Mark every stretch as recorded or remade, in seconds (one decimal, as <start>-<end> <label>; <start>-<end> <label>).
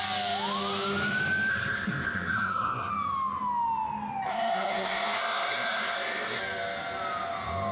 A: 0.0-1.5 recorded; 1.5-2.9 remade; 2.9-4.3 recorded; 4.3-6.4 remade; 6.4-7.7 recorded